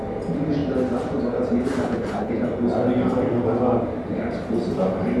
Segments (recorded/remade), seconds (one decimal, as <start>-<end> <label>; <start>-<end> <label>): 0.0-1.8 recorded; 1.8-2.3 remade; 2.3-5.2 recorded